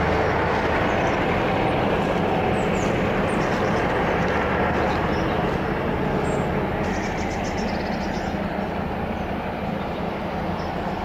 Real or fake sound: real